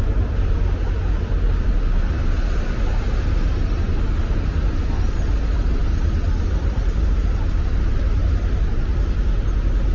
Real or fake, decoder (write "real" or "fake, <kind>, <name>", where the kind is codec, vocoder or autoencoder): real